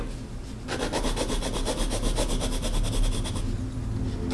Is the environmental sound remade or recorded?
recorded